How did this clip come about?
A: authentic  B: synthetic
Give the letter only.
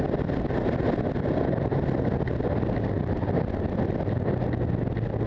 A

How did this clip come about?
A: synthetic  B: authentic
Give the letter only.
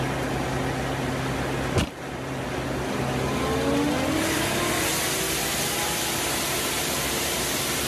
B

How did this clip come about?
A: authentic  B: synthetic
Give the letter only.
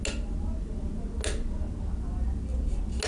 A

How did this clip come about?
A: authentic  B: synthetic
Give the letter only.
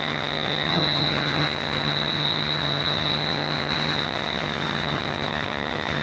B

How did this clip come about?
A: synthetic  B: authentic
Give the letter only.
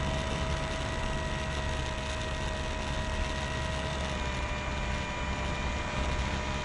B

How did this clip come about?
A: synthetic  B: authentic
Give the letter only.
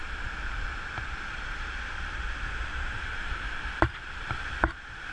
B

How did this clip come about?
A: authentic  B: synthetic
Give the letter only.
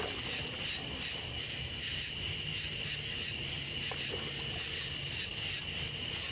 A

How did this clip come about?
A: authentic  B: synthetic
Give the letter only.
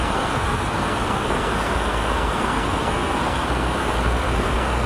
B